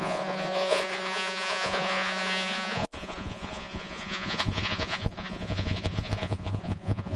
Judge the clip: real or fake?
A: fake